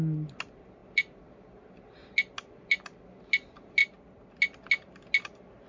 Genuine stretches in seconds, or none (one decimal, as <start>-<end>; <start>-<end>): 0.0-5.7